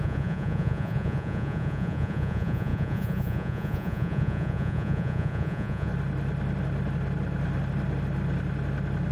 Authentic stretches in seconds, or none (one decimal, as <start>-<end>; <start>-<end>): 5.9-9.1